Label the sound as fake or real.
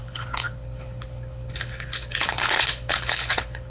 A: fake